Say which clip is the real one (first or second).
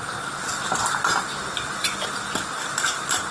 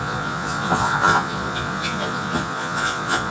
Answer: first